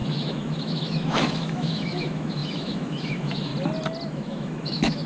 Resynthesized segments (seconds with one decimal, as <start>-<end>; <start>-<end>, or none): 0.0-3.5; 4.1-5.1